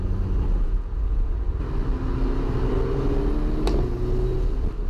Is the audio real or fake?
real